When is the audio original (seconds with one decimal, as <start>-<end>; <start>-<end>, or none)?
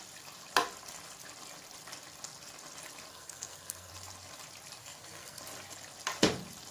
0.0-3.1; 3.9-4.8; 5.4-6.7